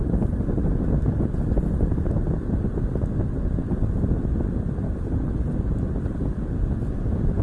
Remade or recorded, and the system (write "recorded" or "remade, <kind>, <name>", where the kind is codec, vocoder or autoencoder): recorded